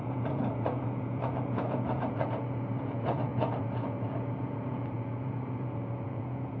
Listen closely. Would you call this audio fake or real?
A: fake